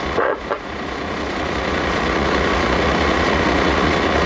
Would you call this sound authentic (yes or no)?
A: no